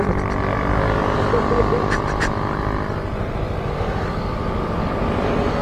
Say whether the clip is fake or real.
real